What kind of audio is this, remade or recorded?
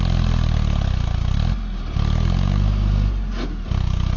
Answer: recorded